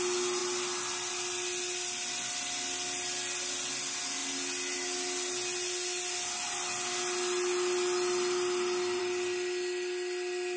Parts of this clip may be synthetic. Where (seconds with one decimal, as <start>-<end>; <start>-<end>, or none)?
none